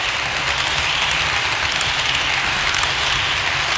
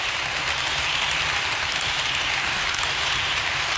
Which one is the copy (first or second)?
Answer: second